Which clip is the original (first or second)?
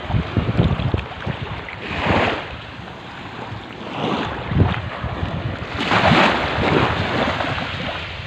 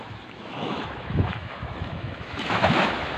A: first